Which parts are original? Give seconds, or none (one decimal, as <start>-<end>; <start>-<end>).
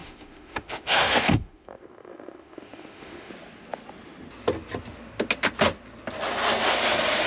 3.3-7.3